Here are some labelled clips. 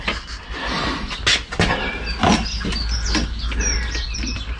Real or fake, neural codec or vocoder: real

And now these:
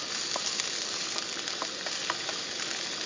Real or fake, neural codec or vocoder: real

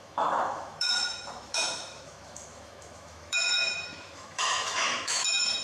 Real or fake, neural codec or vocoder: fake, autoencoder, DAC-VAE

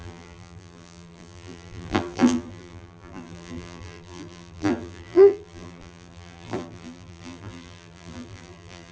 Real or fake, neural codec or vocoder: fake, vocoder, BigVGAN v2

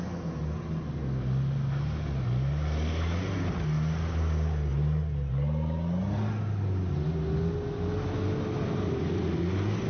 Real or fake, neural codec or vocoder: real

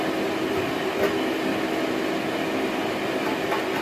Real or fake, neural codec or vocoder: real